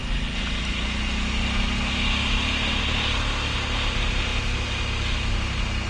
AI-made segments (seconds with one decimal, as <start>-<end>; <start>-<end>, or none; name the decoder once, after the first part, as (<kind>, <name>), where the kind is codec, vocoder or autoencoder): none